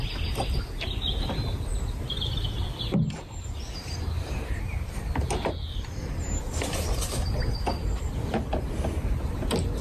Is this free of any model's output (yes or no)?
yes